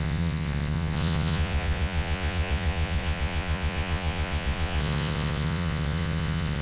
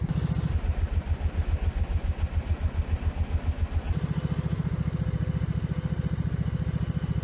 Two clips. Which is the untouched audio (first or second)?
second